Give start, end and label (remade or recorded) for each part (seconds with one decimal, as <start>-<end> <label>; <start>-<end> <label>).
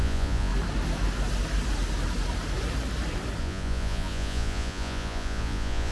0.0-0.5 remade; 0.5-3.4 recorded; 3.4-5.9 remade